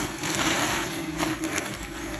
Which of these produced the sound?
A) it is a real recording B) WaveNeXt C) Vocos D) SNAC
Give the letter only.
D